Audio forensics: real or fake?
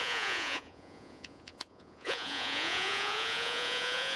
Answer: fake